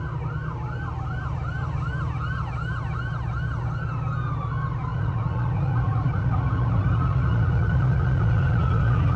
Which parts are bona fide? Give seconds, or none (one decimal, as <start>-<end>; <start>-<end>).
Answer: 0.0-4.9